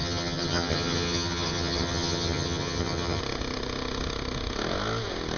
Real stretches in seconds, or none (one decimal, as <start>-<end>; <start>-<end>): 3.2-5.4